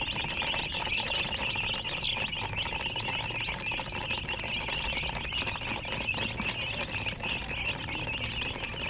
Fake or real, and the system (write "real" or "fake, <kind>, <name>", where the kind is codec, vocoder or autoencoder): real